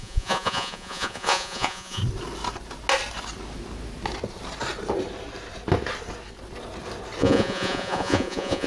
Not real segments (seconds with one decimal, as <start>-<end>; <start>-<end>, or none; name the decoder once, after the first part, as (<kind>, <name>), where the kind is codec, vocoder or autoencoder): 0.0-2.0 (vocoder, Vocos); 7.2-8.7